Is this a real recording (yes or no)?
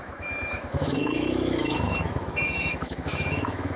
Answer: no